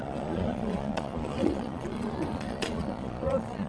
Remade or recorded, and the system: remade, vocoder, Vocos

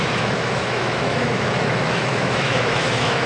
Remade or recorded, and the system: remade, autoencoder, DAC-VAE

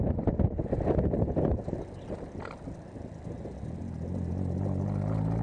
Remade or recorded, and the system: recorded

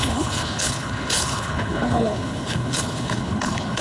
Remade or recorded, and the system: remade, codec, HILCodec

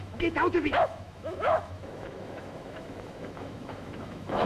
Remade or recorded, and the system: remade, autoencoder, DAC-VAE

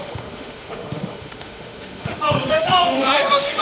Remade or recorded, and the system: remade, autoencoder, DAC-VAE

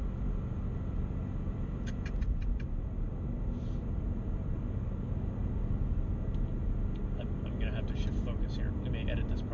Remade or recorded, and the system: recorded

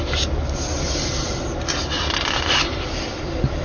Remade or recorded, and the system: remade, vocoder, BigVGAN v2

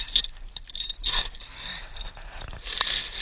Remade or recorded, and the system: recorded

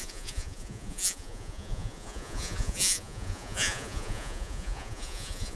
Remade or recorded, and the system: remade, vocoder, Vocos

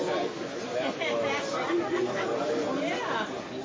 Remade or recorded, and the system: recorded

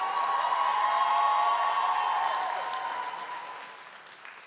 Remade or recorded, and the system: recorded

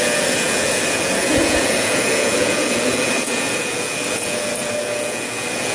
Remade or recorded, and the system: remade, vocoder, Vocos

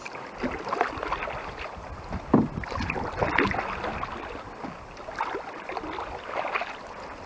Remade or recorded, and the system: recorded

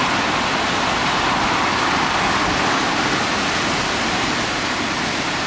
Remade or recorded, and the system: recorded